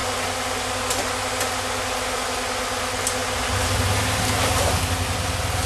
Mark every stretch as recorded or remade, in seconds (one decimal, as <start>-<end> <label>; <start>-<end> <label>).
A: 0.0-5.7 recorded